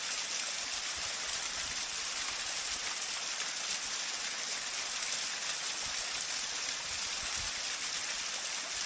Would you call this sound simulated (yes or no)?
no